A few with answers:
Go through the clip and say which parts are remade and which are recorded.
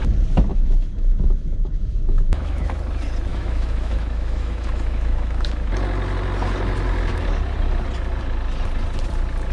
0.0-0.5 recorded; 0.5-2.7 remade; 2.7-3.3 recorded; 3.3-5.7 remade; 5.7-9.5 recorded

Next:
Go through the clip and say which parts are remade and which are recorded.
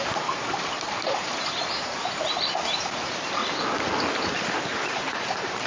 0.0-0.4 remade; 0.4-1.1 recorded; 1.1-3.4 remade; 3.4-4.6 recorded; 4.6-5.7 remade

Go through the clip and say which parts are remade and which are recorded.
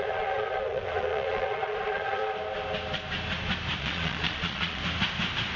0.0-2.2 remade; 2.2-3.8 recorded; 3.8-4.8 remade; 4.8-5.6 recorded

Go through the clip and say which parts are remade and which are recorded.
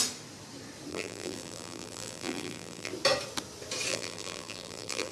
0.0-0.9 recorded; 0.9-2.9 remade; 2.9-3.9 recorded; 3.9-5.1 remade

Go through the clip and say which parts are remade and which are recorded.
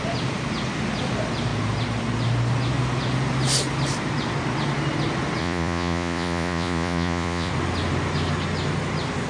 0.0-5.4 recorded; 5.4-7.5 remade; 7.5-9.3 recorded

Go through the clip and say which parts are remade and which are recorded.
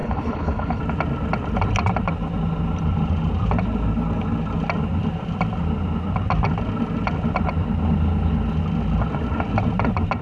0.0-0.8 remade; 0.8-10.2 recorded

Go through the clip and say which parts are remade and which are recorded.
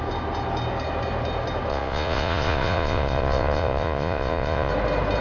0.0-1.7 recorded; 1.7-4.7 remade; 4.7-5.2 recorded